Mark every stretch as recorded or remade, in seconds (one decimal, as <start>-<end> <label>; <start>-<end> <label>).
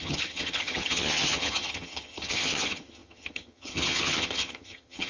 0.0-5.1 remade